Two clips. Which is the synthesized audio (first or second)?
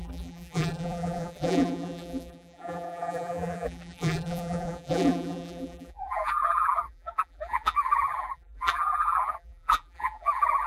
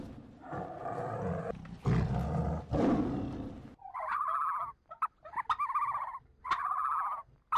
first